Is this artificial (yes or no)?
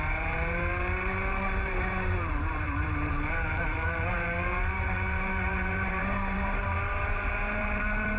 yes